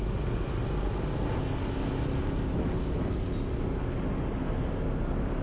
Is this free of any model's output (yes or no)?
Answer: yes